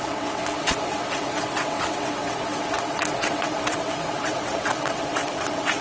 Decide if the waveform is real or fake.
fake